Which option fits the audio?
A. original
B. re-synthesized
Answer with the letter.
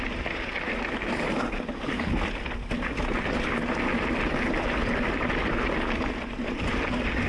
A